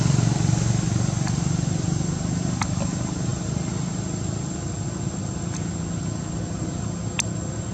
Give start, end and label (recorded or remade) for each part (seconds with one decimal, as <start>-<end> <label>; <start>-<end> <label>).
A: 0.0-7.7 recorded